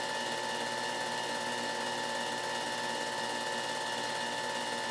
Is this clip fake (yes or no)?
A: no